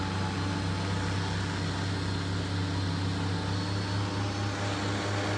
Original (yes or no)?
yes